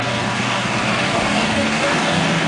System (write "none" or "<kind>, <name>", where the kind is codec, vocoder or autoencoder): codec, DAC